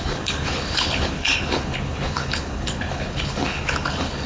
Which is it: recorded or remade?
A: remade